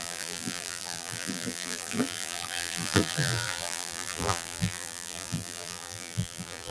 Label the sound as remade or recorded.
remade